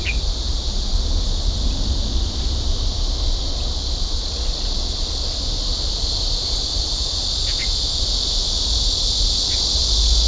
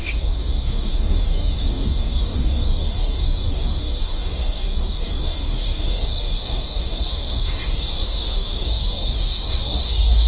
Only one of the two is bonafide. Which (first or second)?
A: first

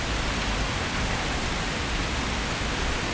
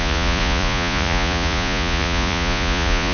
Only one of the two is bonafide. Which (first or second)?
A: first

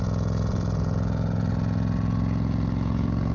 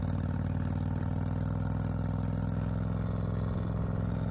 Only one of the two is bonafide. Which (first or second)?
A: second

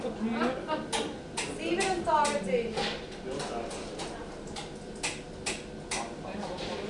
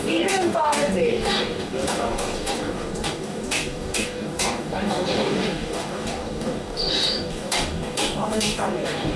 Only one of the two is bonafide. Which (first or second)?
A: first